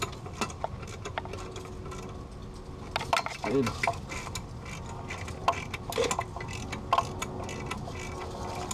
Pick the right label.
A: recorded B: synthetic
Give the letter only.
A